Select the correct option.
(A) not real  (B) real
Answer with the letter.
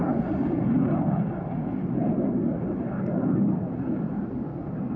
B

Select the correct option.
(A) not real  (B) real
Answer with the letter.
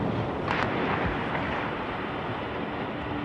B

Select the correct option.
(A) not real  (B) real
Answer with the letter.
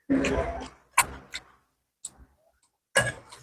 B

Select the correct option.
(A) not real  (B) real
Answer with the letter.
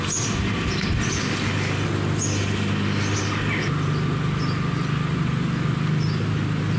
B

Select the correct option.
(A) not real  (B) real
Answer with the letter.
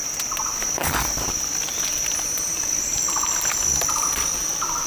B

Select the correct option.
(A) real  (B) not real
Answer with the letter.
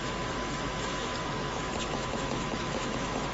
B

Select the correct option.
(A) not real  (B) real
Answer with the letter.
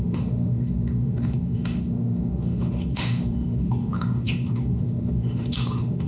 A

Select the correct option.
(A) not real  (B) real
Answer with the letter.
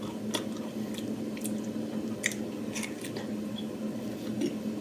B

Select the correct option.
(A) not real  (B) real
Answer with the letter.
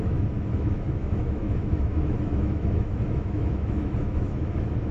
A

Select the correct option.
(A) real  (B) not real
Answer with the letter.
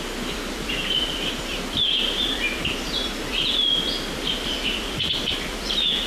A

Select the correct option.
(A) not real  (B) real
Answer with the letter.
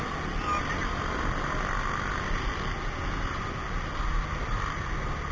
B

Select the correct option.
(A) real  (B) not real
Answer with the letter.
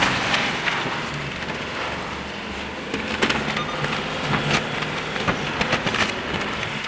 A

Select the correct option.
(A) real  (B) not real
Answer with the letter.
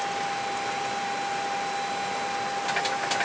A